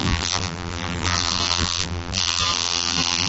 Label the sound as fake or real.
fake